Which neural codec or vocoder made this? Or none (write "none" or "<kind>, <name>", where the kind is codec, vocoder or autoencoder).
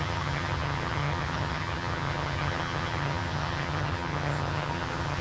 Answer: vocoder, HiFi-GAN